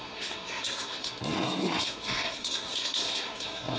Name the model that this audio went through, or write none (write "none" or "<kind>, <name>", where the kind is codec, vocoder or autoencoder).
codec, SNAC